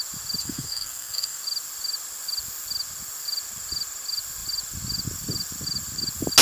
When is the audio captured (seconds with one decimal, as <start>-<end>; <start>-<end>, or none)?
0.0-0.4; 1.4-6.4